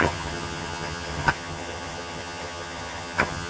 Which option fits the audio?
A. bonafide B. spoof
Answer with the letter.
B